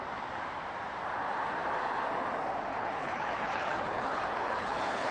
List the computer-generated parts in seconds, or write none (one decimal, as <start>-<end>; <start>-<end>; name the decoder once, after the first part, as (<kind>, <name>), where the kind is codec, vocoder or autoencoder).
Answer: 2.7-5.1 (codec, HILCodec)